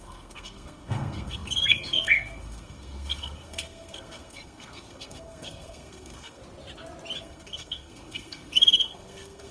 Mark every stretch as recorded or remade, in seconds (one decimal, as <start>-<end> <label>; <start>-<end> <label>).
0.0-6.4 remade; 6.4-7.2 recorded; 7.2-9.5 remade